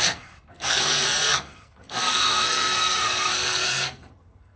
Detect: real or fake fake